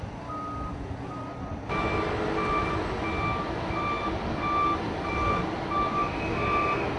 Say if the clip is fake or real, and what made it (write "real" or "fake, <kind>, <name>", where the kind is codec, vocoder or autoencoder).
real